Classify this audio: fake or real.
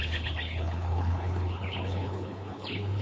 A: fake